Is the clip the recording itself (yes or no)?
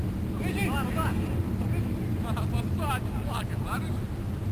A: yes